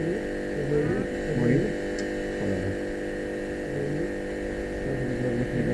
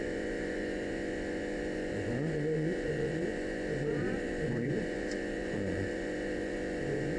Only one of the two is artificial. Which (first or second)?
second